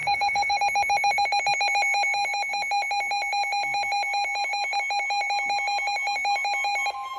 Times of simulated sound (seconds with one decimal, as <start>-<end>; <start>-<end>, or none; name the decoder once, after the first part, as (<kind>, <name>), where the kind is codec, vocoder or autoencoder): 0.0-0.6 (codec, DAC)

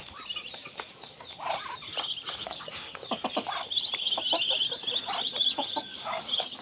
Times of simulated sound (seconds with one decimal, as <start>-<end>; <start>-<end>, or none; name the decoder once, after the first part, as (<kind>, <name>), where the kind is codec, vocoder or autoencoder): 2.4-3.1 (codec, DAC); 5.9-6.6

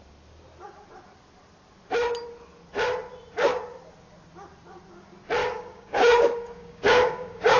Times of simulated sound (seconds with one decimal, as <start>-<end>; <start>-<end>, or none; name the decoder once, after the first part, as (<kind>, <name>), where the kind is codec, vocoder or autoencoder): 5.4-7.6 (codec, DAC)

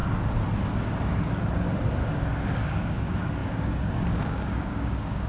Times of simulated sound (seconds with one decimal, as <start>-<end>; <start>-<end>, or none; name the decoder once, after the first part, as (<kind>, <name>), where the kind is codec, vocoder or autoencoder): 2.0-5.3 (codec, DAC)